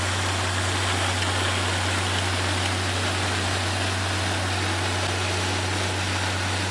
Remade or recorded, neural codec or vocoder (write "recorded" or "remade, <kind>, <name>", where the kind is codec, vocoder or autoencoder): recorded